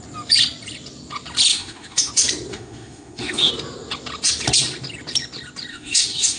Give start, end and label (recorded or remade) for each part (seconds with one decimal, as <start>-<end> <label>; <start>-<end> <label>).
0.0-1.5 recorded; 1.5-2.1 remade; 2.1-2.5 recorded; 2.5-3.5 remade; 3.5-5.7 recorded; 5.7-6.4 remade